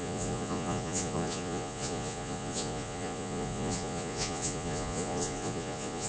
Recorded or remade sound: remade